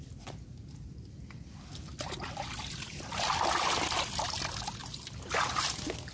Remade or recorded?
recorded